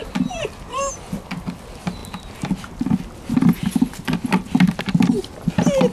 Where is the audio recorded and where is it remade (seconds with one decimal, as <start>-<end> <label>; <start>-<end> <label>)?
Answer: 0.0-5.9 recorded